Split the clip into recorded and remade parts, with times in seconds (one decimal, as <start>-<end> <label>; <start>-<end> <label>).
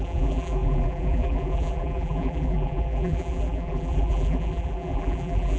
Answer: 0.0-5.6 remade